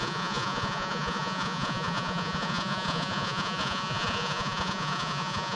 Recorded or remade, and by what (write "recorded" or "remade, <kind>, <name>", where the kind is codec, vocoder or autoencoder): remade, vocoder, Vocos